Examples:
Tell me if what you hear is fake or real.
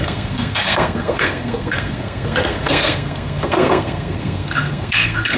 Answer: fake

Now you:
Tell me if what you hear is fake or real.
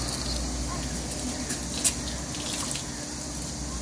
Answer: real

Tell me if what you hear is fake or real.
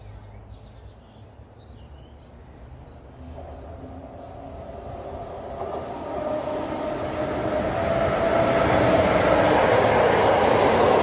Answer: real